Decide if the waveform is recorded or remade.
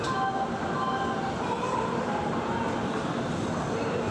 recorded